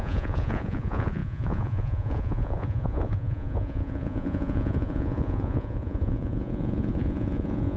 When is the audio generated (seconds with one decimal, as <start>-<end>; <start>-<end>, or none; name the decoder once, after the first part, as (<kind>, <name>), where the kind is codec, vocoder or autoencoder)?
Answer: 0.0-7.8 (vocoder, Vocos)